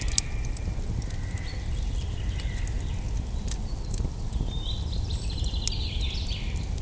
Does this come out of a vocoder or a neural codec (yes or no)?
no